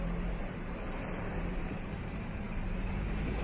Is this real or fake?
fake